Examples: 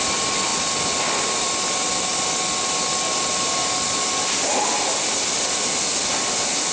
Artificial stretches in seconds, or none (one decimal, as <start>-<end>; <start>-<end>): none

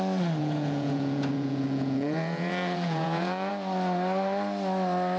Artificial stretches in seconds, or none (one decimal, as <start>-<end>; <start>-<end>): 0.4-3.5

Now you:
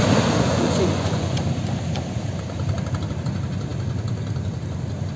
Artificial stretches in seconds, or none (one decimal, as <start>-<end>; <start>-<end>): 0.5-1.4

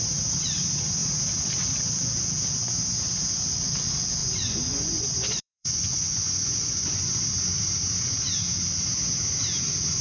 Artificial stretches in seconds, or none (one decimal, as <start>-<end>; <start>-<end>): 4.2-7.2

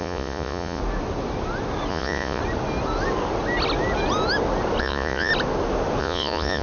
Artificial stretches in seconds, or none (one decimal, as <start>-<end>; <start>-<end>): 0.0-0.8; 1.9-2.4; 4.8-5.3; 6.0-6.6